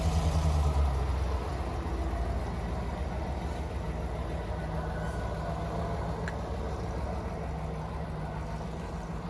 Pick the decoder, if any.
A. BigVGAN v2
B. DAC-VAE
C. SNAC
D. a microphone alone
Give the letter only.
D